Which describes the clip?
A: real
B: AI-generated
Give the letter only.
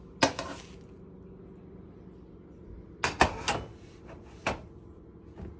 A